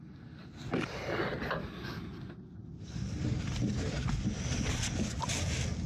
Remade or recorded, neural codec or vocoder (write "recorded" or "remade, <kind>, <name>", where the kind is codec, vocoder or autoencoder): recorded